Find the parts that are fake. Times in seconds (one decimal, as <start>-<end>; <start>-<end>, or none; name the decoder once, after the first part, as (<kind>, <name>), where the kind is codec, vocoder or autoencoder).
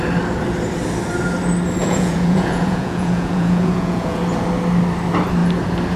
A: 1.8-4.2 (vocoder, Vocos)